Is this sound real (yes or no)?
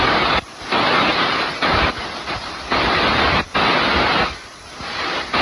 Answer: yes